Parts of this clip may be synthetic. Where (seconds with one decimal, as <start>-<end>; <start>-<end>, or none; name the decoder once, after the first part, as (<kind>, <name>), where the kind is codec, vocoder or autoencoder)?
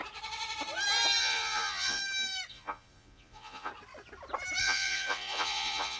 1.2-2.0 (vocoder, Vocos); 2.5-3.7; 4.6-6.0